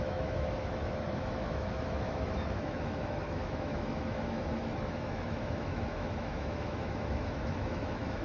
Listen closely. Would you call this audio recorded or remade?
remade